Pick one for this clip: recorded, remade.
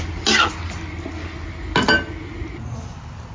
recorded